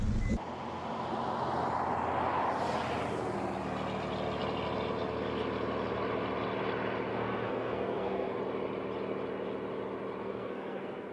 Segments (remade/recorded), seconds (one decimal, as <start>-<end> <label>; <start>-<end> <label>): 0.0-7.1 recorded; 7.1-8.4 remade; 8.4-10.2 recorded; 10.2-11.1 remade